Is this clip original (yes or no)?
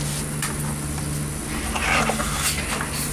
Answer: yes